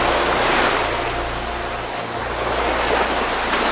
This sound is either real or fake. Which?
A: real